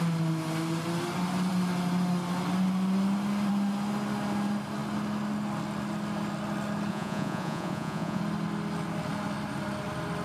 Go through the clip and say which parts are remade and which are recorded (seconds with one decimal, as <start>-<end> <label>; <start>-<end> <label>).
0.0-6.9 recorded; 6.9-8.2 remade; 8.2-10.2 recorded